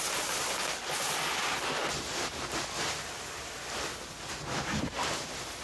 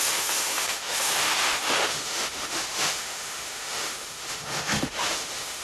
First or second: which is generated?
second